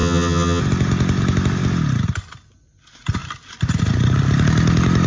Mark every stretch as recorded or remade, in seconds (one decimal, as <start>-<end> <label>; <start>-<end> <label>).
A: 0.0-0.6 remade; 0.6-5.1 recorded